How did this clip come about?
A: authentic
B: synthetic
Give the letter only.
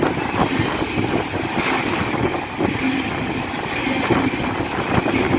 A